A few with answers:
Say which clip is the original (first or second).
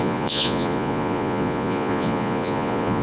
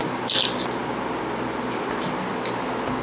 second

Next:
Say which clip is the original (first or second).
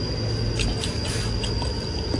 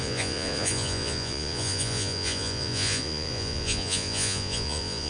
first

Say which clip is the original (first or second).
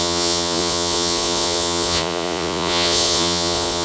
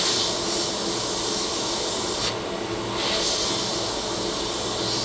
second